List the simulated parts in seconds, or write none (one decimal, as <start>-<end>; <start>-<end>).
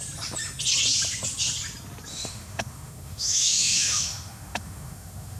2.1-5.4